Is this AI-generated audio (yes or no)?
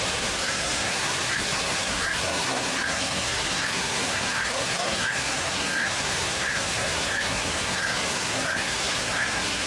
yes